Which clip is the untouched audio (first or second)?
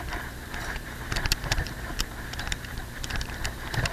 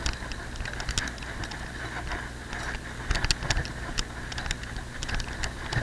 second